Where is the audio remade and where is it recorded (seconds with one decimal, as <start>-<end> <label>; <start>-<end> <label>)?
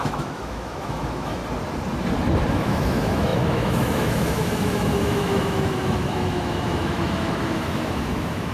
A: 0.0-1.4 remade; 1.4-2.5 recorded; 2.5-8.5 remade